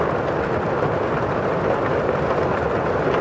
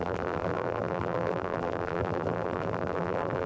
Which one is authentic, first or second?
first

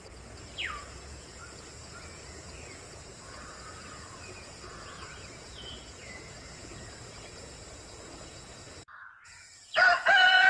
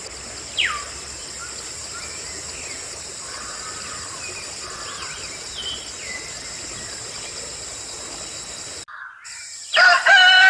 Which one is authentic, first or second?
second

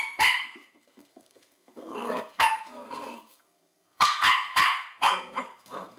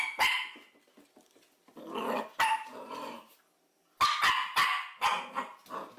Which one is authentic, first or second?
second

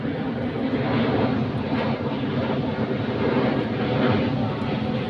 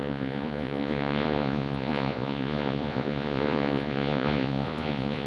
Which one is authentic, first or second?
first